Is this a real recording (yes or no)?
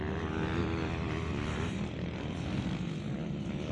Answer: yes